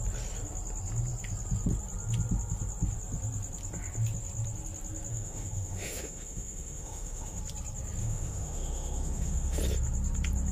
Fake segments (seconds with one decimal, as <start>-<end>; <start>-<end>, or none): 5.1-7.4; 8.0-9.6